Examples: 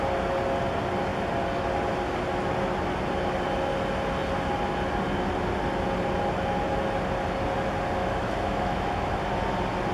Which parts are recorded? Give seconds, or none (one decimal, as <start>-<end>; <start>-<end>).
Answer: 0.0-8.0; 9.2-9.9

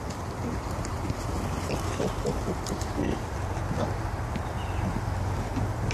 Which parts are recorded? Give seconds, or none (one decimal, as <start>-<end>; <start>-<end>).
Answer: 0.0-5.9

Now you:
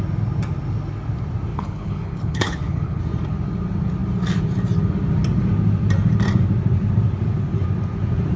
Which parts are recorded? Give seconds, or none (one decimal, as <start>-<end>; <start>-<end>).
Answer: 0.0-1.5; 3.0-8.4

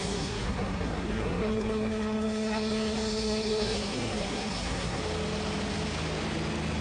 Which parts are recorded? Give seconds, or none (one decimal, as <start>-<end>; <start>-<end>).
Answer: 5.0-6.8

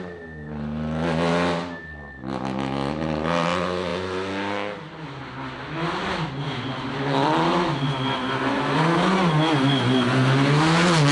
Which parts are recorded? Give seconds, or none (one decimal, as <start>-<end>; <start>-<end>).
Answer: 0.0-11.1